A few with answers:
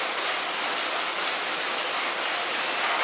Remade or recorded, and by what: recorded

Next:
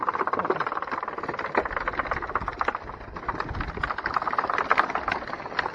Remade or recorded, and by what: recorded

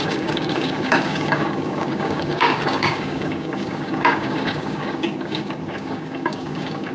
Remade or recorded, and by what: remade, codec, DAC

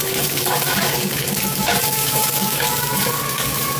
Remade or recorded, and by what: remade, codec, DAC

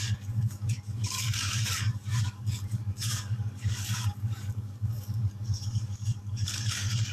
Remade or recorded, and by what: remade, codec, DAC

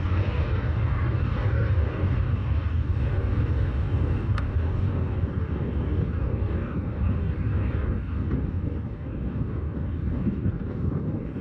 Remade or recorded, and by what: remade, codec, DAC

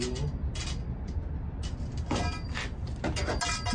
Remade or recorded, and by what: recorded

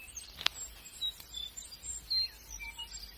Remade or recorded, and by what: recorded